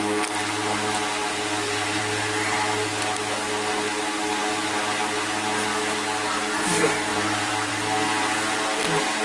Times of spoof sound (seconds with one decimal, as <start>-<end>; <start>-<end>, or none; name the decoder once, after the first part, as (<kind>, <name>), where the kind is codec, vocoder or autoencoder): 1.2-2.0 (vocoder, BigVGAN v2); 7.1-7.7